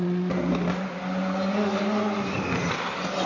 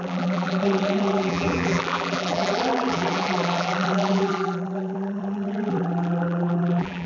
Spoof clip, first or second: second